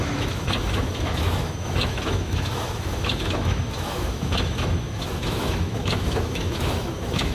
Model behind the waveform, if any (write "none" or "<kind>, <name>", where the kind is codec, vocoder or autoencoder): autoencoder, DAC-VAE